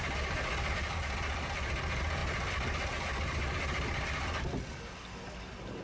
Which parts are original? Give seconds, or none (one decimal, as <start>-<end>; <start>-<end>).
0.0-5.8